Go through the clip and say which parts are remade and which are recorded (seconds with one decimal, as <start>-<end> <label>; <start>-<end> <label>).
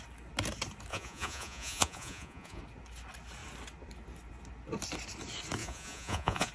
0.0-0.9 recorded; 0.9-2.6 remade; 2.6-5.6 recorded; 5.6-6.5 remade